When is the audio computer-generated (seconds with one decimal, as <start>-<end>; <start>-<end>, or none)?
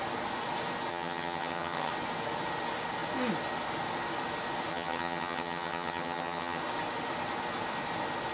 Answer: 0.9-1.9; 4.7-6.6